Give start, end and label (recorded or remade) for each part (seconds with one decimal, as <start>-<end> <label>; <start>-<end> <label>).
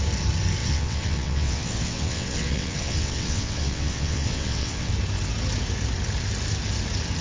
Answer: 0.0-0.6 recorded; 0.6-4.9 remade; 4.9-7.2 recorded